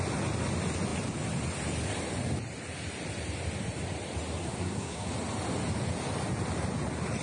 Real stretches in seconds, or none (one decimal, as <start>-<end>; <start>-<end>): 0.0-4.4; 5.1-7.2